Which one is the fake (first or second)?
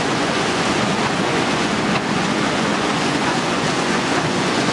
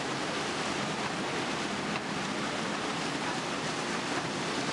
first